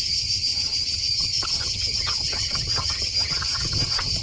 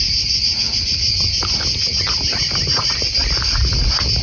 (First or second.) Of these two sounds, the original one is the second